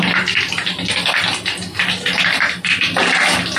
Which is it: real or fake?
real